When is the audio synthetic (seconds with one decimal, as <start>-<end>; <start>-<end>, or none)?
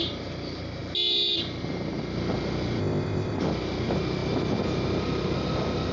2.8-3.4